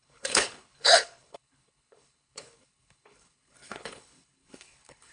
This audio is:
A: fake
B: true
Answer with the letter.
A